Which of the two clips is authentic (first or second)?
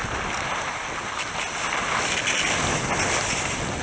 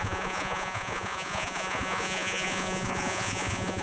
first